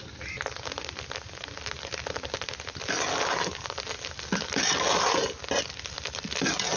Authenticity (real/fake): real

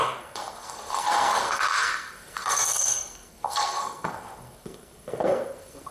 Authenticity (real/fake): fake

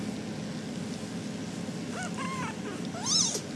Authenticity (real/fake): real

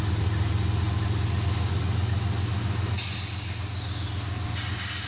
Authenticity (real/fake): real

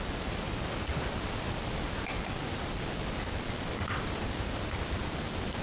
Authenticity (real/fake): real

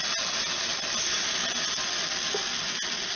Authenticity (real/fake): real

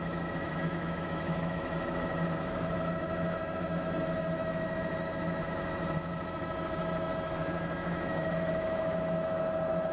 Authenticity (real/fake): fake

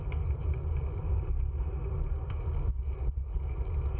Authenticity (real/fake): real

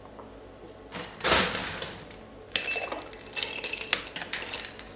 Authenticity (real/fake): real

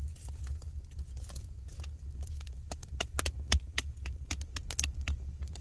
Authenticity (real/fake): real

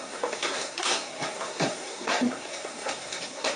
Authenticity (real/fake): fake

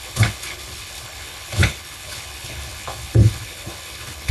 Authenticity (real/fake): fake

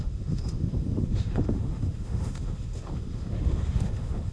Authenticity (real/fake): fake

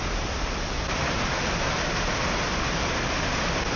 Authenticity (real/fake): real